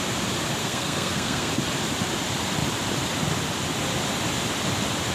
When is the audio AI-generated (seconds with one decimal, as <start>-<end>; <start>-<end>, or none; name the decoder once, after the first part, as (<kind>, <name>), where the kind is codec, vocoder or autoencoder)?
0.6-1.5 (codec, SNAC)